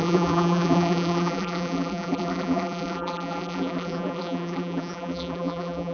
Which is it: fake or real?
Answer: fake